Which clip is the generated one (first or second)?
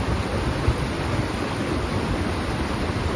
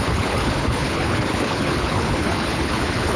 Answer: second